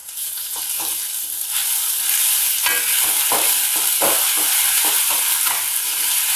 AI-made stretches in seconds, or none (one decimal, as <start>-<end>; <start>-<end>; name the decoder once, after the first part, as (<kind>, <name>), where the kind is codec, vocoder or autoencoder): 0.0-0.6 (vocoder, Vocos)